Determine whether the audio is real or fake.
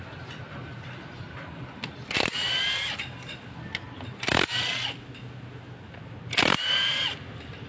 real